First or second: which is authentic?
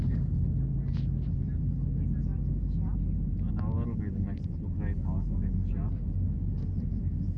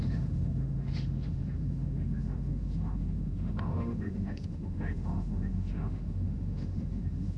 first